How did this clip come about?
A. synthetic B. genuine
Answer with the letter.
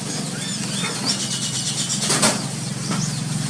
B